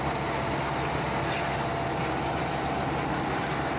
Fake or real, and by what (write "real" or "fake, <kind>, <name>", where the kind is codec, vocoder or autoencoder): real